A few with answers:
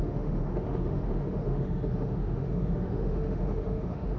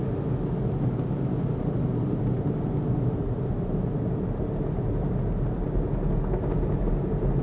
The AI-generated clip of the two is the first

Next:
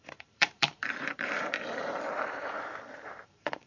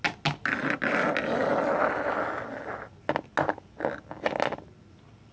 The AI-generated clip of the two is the first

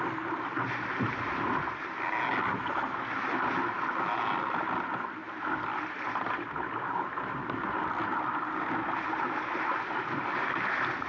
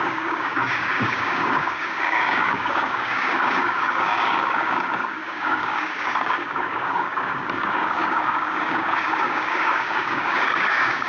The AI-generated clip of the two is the second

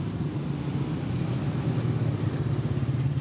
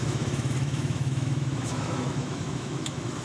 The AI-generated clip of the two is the second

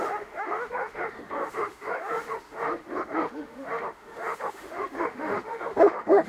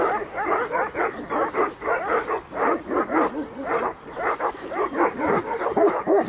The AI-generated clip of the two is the first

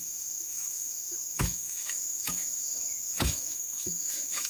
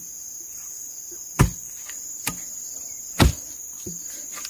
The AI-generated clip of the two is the first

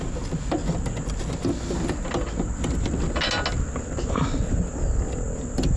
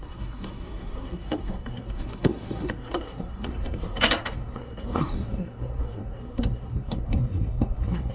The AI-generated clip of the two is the second